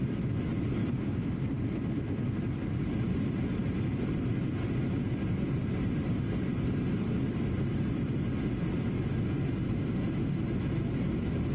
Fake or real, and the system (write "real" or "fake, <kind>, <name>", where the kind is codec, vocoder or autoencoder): real